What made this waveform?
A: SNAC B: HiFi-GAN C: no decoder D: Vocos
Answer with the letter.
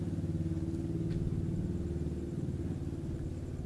C